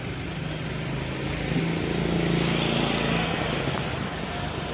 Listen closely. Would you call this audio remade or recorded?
recorded